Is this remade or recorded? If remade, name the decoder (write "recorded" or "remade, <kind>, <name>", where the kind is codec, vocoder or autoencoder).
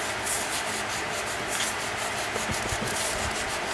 recorded